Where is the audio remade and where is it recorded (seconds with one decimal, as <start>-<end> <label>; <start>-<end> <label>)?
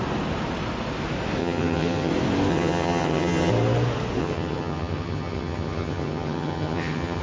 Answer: 0.0-1.4 recorded; 1.4-2.1 remade; 2.1-2.5 recorded; 2.5-3.5 remade; 3.5-4.2 recorded; 4.2-7.2 remade